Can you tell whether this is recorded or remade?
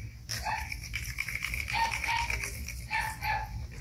recorded